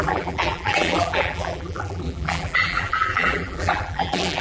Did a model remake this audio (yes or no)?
yes